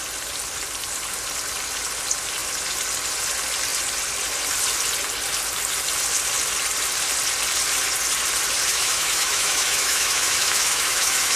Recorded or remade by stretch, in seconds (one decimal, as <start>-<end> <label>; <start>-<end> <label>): 0.0-8.7 recorded; 8.7-11.4 remade